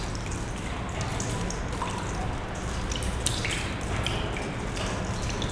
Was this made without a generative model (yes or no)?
yes